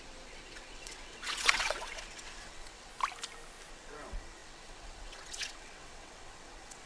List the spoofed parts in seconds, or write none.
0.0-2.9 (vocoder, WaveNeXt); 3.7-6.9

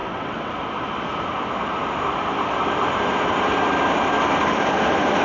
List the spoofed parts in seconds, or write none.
0.0-0.5 (vocoder, WaveNeXt)